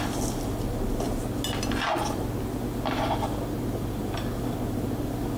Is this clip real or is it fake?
real